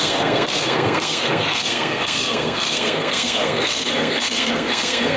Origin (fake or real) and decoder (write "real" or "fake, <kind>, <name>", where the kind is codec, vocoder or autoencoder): fake, codec, SNAC